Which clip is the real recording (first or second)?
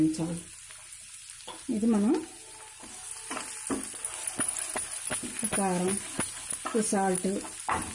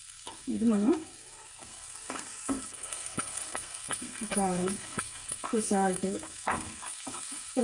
first